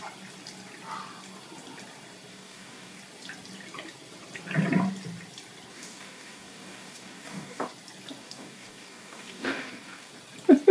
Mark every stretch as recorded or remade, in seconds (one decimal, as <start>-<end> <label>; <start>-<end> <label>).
0.0-2.3 recorded; 2.3-3.0 remade; 3.0-5.7 recorded; 5.7-7.7 remade; 7.7-8.2 recorded; 8.2-10.1 remade; 10.1-10.7 recorded